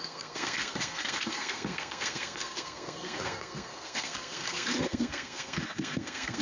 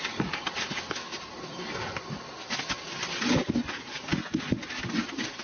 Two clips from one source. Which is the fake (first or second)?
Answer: first